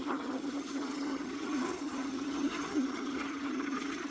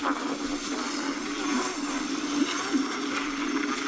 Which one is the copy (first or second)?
first